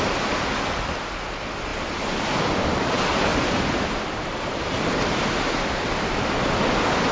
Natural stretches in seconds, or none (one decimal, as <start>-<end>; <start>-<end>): 0.0-1.7; 2.4-3.3; 5.9-7.1